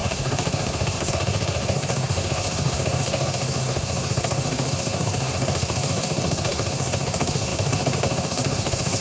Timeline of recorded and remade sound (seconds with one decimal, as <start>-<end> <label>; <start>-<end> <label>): 0.0-9.0 remade